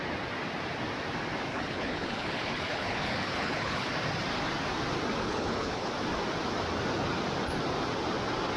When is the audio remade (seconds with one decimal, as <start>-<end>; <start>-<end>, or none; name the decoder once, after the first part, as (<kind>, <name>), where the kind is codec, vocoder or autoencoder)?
1.5-3.9 (codec, HILCodec); 5.2-5.9